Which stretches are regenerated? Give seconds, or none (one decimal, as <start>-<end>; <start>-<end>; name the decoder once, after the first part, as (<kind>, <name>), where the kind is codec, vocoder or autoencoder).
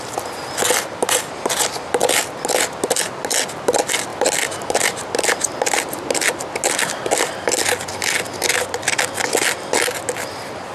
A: none